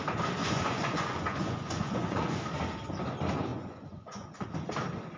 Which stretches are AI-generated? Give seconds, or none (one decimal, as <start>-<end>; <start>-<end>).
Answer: 0.4-2.4; 3.5-4.5